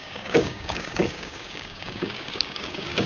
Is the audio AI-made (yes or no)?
yes